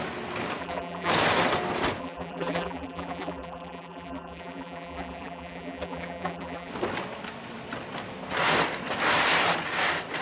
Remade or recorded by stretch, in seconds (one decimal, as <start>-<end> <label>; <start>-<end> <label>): 0.0-0.6 recorded; 0.6-1.1 remade; 1.1-2.0 recorded; 2.0-6.7 remade; 6.7-10.2 recorded